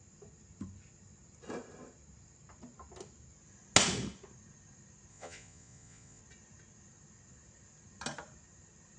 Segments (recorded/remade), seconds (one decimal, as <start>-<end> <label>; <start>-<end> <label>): 0.0-5.1 recorded; 5.1-6.2 remade; 6.2-9.0 recorded